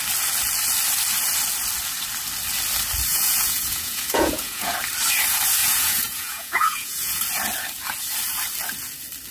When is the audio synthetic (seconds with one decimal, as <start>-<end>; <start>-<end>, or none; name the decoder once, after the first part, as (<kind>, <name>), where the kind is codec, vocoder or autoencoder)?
3.1-4.7 (vocoder, Vocos); 5.6-7.2

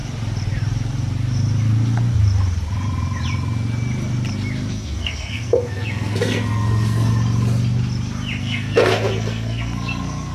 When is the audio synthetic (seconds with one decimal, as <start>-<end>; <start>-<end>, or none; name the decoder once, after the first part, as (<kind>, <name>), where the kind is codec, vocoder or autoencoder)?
4.7-7.1 (codec, SNAC); 8.4-10.3